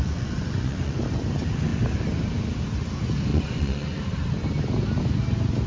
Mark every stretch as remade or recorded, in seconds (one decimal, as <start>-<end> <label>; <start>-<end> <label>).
0.0-1.0 remade; 1.0-3.3 recorded; 3.3-4.0 remade; 4.0-5.7 recorded